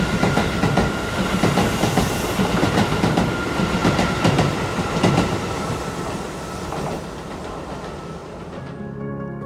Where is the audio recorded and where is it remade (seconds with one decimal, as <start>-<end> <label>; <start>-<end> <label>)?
0.0-3.8 recorded; 3.8-4.4 remade; 4.4-8.2 recorded; 8.2-9.1 remade; 9.1-9.5 recorded